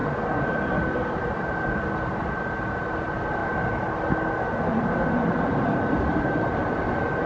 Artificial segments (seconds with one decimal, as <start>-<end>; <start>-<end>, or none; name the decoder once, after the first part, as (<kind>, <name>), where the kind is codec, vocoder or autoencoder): 0.0-3.4 (vocoder, BigVGAN v2)